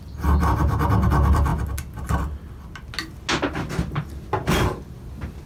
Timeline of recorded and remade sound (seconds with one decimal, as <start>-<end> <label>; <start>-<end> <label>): 0.0-5.5 recorded